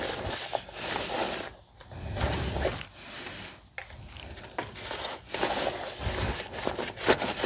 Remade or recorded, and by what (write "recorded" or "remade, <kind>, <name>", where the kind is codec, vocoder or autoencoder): recorded